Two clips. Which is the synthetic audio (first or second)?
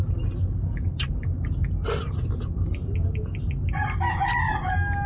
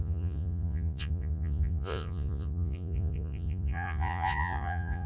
second